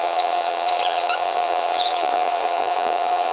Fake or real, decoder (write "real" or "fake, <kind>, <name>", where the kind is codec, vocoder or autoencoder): fake, vocoder, Vocos